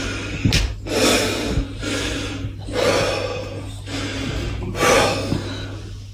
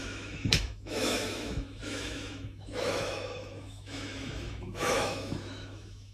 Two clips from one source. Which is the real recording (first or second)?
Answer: first